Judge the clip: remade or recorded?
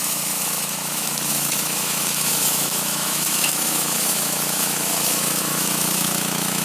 remade